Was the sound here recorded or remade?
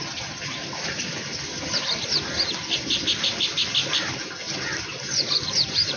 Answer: remade